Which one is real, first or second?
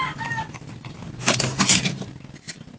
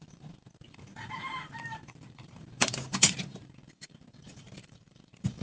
first